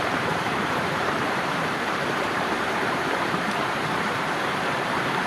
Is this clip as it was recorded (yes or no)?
no